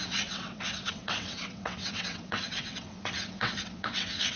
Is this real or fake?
fake